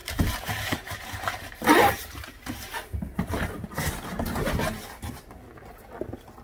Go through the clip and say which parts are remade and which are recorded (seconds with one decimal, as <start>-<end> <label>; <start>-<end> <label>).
0.0-3.8 remade; 3.8-6.4 recorded